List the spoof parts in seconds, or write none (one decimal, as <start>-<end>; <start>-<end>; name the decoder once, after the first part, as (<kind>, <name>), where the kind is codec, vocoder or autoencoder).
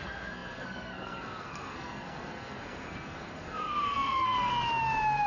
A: 0.0-4.5 (codec, SNAC)